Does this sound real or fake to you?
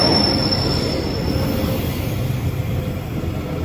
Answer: real